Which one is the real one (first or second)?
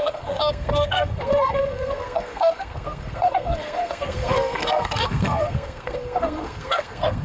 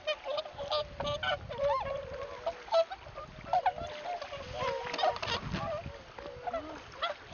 second